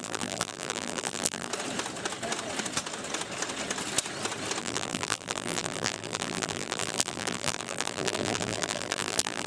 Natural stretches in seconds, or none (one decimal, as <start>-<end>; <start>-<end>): 1.5-4.6